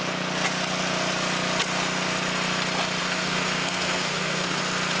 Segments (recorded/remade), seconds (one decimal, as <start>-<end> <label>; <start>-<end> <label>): 0.0-3.0 recorded; 3.0-4.6 remade; 4.6-5.0 recorded